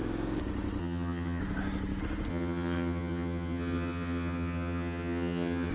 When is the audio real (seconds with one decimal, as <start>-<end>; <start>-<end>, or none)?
0.0-0.8; 1.4-2.3